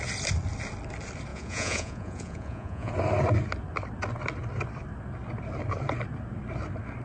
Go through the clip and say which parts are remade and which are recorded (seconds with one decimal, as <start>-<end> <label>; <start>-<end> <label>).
0.0-1.3 recorded; 1.3-2.9 remade; 2.9-7.0 recorded